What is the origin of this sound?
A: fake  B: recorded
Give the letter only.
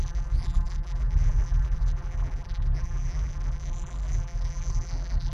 A